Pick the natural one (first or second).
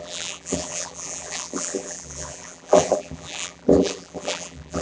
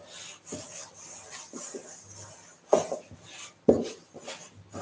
second